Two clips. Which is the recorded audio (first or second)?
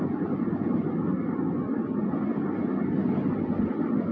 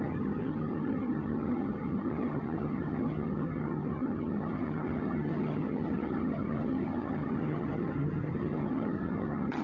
first